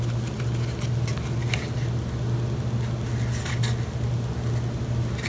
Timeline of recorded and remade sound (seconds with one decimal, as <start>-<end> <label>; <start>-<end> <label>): 0.0-5.3 recorded